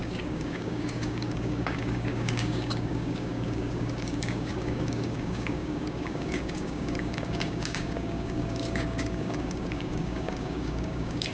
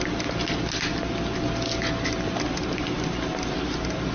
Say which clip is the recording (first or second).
second